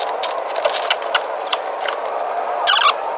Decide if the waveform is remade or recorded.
recorded